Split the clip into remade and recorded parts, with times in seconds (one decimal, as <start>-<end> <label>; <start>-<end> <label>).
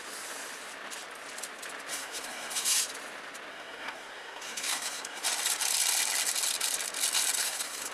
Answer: 0.0-1.9 recorded; 1.9-2.7 remade; 2.7-3.5 recorded; 3.5-5.2 remade; 5.2-7.4 recorded; 7.4-7.9 remade